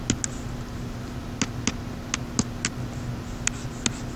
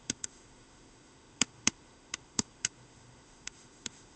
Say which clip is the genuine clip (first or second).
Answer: first